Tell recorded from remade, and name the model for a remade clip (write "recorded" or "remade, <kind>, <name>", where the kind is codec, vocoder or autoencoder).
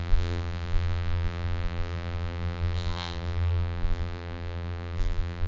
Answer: remade, vocoder, BigVGAN v2